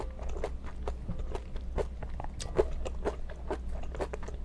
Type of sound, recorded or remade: recorded